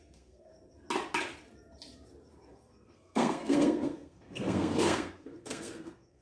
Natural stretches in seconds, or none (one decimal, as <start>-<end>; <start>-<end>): 0.5-2.5